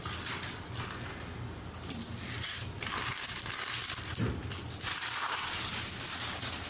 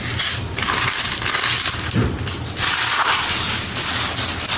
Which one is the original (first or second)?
second